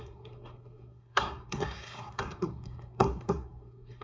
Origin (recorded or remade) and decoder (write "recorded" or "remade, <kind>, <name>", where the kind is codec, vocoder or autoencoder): remade, codec, SNAC